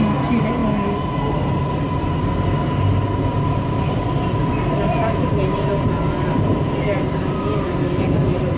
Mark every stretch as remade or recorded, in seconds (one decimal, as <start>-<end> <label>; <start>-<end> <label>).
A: 0.0-8.6 recorded